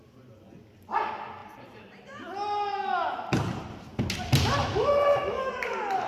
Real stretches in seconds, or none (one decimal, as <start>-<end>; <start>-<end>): 0.0-4.6; 5.5-6.1